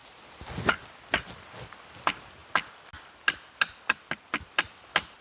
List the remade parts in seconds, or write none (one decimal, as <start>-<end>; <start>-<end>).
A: none